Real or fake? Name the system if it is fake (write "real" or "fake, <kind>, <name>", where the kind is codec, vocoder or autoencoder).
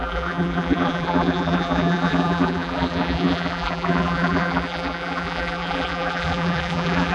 fake, vocoder, BigVGAN v2